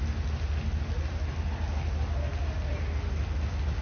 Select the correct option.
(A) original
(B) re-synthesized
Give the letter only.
A